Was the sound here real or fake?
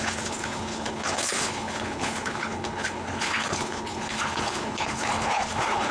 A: fake